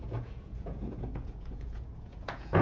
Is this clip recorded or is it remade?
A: remade